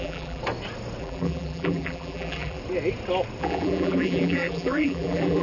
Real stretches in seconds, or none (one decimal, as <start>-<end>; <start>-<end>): 0.4-1.0; 2.6-3.4